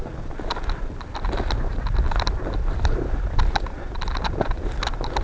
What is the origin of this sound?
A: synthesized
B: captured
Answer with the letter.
B